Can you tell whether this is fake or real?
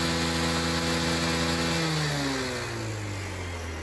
real